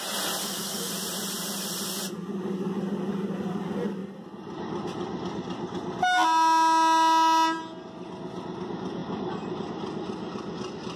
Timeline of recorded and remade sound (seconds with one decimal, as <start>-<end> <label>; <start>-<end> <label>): 0.0-0.4 recorded; 0.4-0.9 remade; 0.9-11.0 recorded